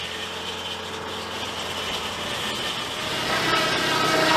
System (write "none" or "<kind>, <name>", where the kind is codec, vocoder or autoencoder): none